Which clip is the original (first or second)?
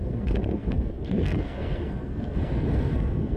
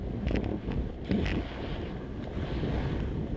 second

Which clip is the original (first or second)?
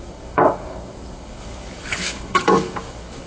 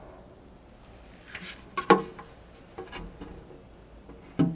second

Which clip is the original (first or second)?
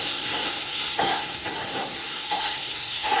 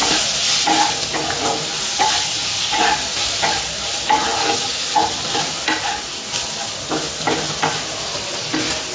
second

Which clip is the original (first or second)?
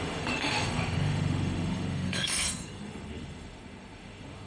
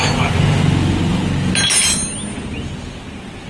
second